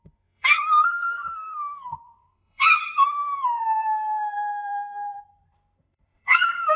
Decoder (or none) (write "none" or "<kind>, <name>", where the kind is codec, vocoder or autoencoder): codec, SNAC